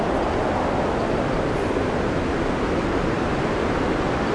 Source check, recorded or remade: recorded